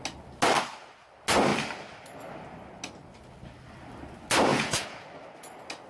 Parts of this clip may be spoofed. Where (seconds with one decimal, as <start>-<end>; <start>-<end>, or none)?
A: 4.5-5.1